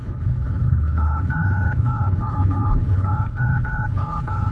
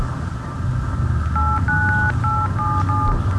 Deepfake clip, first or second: first